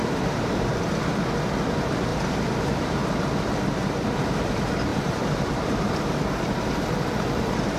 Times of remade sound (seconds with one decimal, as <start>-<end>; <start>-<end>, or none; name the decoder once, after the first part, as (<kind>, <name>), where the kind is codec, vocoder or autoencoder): 0.0-0.8 (vocoder, BigVGAN v2); 2.1-2.9; 4.9-7.8